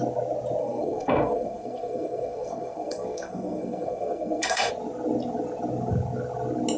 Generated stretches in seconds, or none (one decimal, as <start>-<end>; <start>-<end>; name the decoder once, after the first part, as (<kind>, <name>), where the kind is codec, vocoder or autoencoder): 0.6-4.7 (codec, SNAC)